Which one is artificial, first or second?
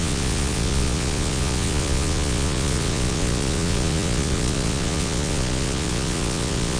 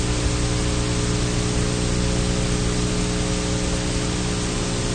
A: first